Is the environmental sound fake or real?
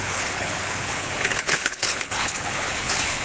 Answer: fake